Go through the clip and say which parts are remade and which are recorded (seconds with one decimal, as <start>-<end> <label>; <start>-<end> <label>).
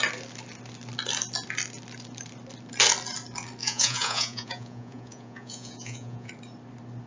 0.0-3.6 recorded; 3.6-6.3 remade; 6.3-7.1 recorded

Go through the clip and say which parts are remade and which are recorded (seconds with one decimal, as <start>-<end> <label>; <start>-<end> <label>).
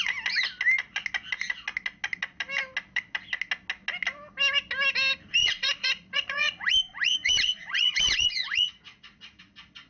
0.0-5.4 recorded; 5.4-9.4 remade; 9.4-9.9 recorded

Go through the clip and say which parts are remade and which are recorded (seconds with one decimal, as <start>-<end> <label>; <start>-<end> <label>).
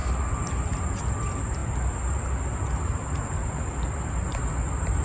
0.0-5.0 recorded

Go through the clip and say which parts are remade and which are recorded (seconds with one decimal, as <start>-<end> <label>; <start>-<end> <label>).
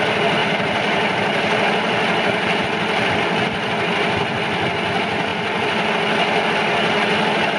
0.0-0.4 recorded; 0.4-2.6 remade; 2.6-5.3 recorded; 5.3-5.9 remade; 5.9-7.6 recorded